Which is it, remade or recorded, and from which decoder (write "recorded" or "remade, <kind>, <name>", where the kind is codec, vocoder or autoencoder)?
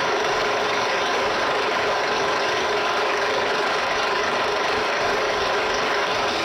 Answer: remade, codec, DAC